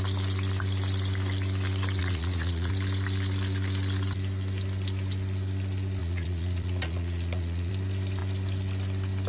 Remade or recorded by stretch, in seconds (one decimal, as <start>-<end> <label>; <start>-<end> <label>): 0.0-2.0 recorded; 2.0-2.7 remade; 2.7-6.0 recorded; 6.0-7.7 remade; 7.7-9.3 recorded